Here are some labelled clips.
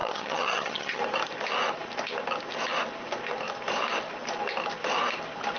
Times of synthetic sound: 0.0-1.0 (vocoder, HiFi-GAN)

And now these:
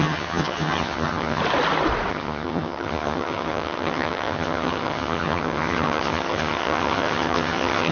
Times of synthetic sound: 0.0-1.4 (vocoder, HiFi-GAN); 2.1-7.9

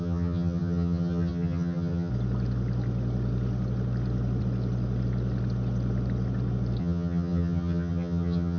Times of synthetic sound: 0.0-2.1 (vocoder, HiFi-GAN); 6.8-8.6

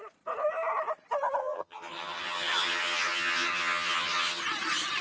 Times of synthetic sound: 1.4-4.4 (vocoder, HiFi-GAN)

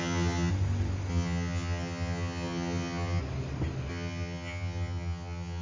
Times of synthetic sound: 0.0-0.5 (vocoder, HiFi-GAN); 1.1-3.2; 3.9-5.6

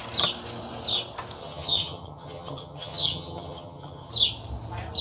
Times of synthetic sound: 1.4-4.1 (vocoder, HiFi-GAN)

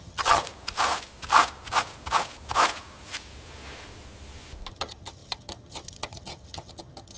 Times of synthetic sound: 0.0-0.4 (vocoder, HiFi-GAN); 4.7-7.2

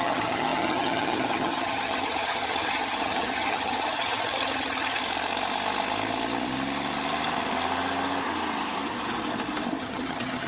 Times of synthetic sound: 0.0-5.0 (vocoder, HiFi-GAN); 9.8-10.5